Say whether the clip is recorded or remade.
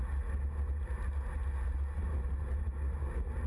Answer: recorded